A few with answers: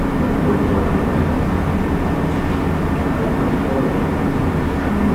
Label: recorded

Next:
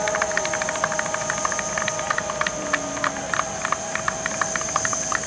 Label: recorded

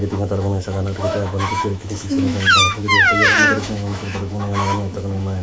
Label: remade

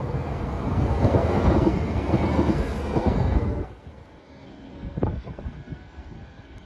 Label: remade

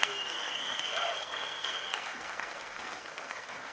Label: remade